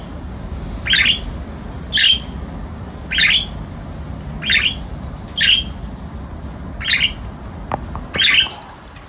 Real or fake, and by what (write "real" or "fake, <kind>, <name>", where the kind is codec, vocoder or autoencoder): real